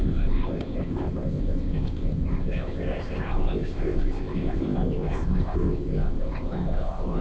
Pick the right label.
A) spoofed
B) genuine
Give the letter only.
A